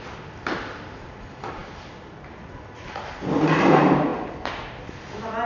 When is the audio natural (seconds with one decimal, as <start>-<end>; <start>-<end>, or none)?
0.0-5.5